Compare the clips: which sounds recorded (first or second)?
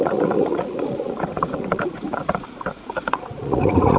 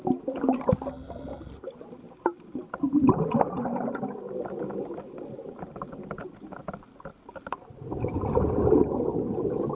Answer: second